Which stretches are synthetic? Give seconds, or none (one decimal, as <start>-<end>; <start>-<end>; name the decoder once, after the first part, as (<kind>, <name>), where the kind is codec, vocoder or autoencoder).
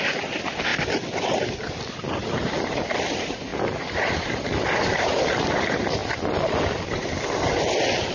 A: 0.7-1.7 (vocoder, BigVGAN v2); 3.5-5.6